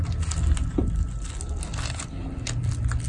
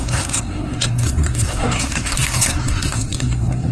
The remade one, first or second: second